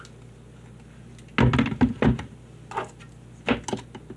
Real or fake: real